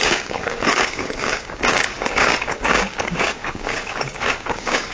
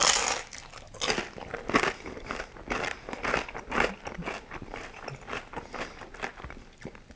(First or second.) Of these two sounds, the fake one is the first